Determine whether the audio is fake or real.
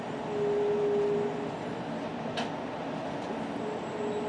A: real